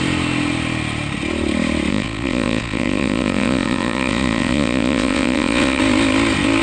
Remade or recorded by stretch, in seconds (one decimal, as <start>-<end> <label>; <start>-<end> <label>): 0.0-1.9 recorded; 1.9-5.8 remade; 5.8-6.6 recorded